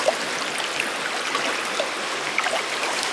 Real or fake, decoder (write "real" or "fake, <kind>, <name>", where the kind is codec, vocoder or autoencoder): real